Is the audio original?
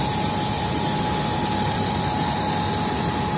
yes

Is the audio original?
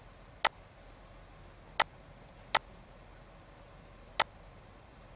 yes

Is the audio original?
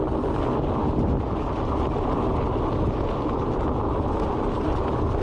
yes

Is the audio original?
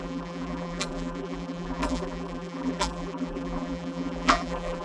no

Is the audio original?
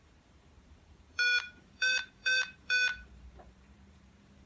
no